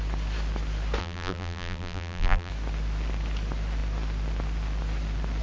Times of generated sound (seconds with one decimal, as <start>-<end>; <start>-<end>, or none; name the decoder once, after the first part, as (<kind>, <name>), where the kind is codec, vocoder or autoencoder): 1.0-2.5 (vocoder, BigVGAN v2)